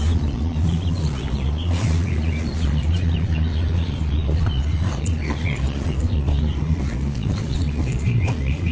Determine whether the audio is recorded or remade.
remade